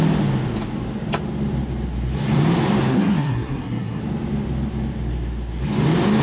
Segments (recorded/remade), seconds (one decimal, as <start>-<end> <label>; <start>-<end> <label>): 0.0-2.9 recorded; 2.9-4.0 remade; 4.0-6.2 recorded